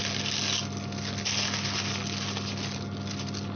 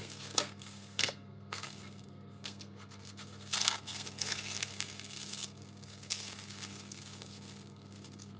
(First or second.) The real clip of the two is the first